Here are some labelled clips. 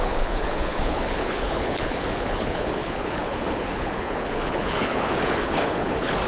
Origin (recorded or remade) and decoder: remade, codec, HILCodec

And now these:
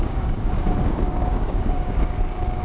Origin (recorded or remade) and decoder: remade, codec, DAC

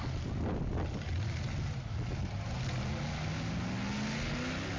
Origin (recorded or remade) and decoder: recorded